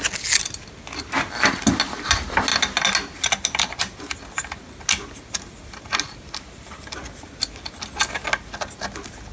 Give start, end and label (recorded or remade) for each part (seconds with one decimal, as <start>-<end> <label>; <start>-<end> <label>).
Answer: 0.0-9.3 recorded